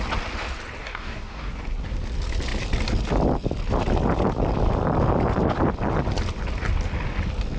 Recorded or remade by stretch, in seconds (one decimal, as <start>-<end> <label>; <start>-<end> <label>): 0.0-0.8 recorded; 0.8-1.5 remade; 1.5-7.6 recorded